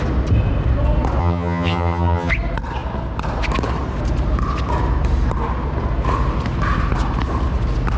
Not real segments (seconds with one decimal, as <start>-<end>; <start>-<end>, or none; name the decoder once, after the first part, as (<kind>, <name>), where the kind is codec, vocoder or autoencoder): 1.2-2.3 (vocoder, HiFi-GAN)